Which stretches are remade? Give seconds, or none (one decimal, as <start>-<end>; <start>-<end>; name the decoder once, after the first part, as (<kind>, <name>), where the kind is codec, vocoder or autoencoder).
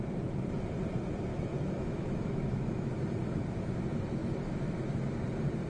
1.3-3.0 (autoencoder, DAC-VAE); 4.2-5.0